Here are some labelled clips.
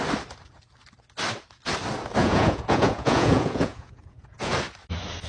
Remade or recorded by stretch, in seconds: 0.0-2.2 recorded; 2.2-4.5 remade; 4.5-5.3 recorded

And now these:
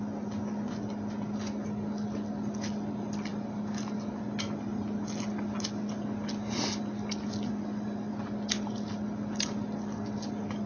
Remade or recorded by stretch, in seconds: 0.0-10.7 recorded

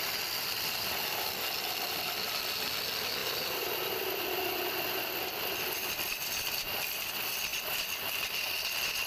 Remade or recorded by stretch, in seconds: 0.0-3.2 recorded; 3.2-7.1 remade; 7.1-7.5 recorded; 7.5-8.3 remade; 8.3-9.1 recorded

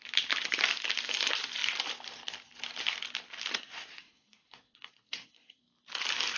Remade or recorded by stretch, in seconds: 0.0-3.5 recorded; 3.5-5.6 remade; 5.6-6.4 recorded

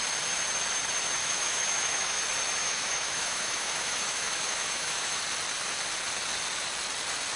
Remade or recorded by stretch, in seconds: 0.0-1.2 recorded; 1.2-2.2 remade; 2.2-2.6 recorded; 2.6-5.2 remade; 5.2-7.4 recorded